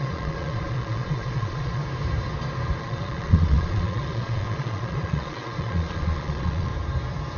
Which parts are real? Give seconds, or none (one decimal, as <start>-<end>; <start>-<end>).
1.8-2.8; 6.7-7.4